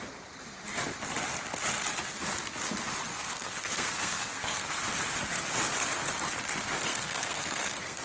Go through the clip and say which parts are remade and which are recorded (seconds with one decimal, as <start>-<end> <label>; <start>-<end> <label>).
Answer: 0.0-3.1 recorded; 3.1-4.8 remade; 4.8-6.9 recorded; 6.9-8.0 remade